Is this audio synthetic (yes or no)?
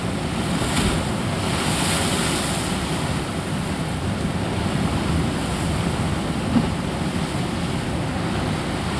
no